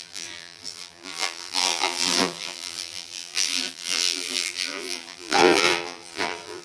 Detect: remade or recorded remade